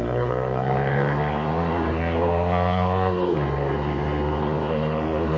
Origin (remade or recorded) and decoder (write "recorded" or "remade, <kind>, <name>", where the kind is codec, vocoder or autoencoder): remade, codec, SNAC